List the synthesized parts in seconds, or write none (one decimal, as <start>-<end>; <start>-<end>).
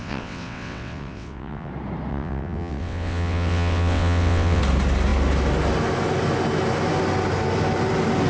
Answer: 0.0-1.7; 2.1-4.6